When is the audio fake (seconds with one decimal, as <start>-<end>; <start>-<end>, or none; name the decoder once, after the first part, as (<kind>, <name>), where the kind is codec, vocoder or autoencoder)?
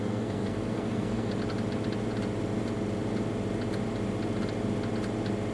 0.0-1.3 (codec, SNAC)